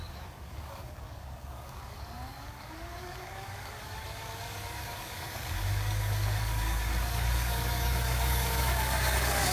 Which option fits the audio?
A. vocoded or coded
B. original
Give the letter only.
A